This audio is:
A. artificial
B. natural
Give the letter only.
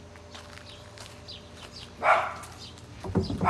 B